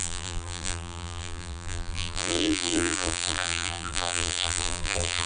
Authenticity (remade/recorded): remade